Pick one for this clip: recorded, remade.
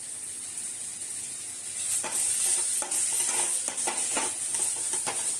recorded